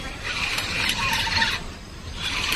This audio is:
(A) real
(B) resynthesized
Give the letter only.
B